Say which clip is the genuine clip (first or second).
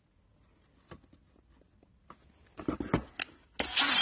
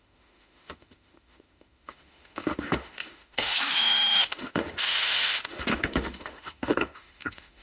first